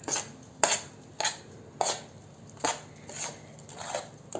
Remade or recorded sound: recorded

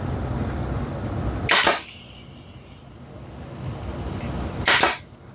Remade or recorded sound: recorded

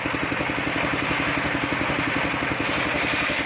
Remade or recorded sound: recorded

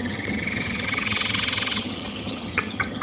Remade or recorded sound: remade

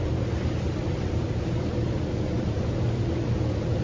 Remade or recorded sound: recorded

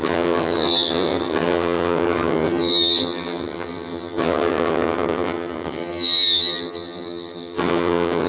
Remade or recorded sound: remade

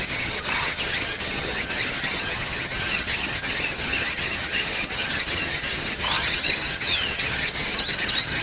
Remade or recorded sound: remade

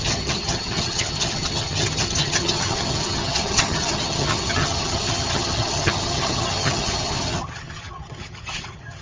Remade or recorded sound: remade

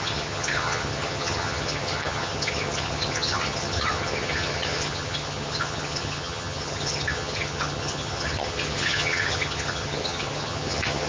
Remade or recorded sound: remade